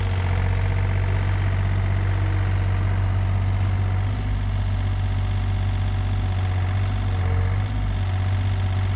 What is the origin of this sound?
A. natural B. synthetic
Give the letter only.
A